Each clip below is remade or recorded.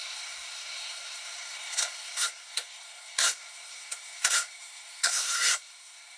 remade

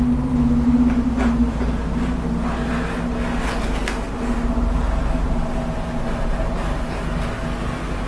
recorded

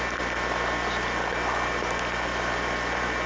recorded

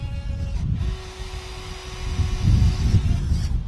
recorded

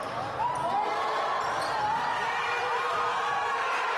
recorded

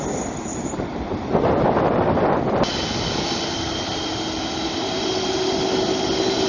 recorded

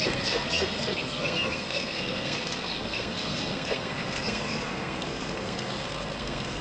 remade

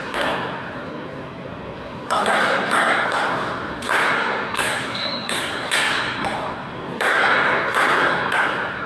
remade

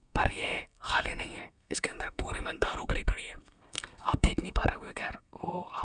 remade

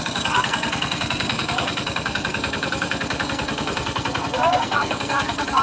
remade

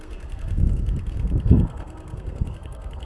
remade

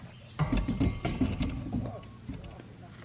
recorded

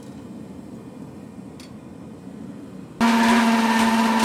recorded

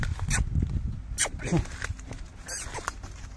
recorded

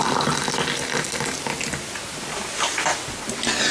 recorded